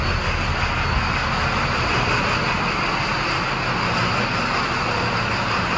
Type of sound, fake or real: real